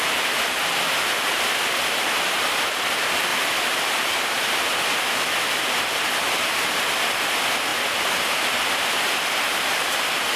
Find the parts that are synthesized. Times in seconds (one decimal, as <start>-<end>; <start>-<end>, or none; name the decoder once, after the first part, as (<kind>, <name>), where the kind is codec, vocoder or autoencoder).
none